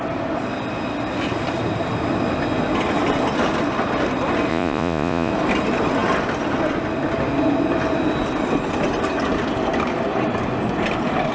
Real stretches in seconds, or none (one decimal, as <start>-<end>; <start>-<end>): 0.0-4.5; 5.3-11.3